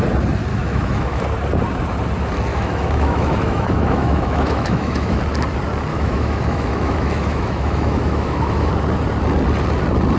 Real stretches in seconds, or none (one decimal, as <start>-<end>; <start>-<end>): 0.0-0.5; 1.2-2.5; 5.2-5.9; 8.7-10.2